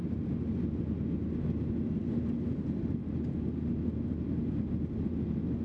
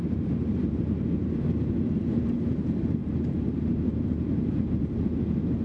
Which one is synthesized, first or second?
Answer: second